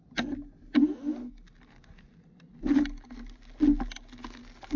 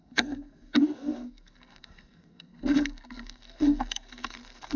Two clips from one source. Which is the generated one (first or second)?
second